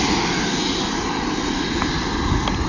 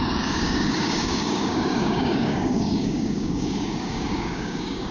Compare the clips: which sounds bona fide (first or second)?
first